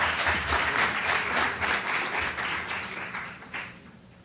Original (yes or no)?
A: no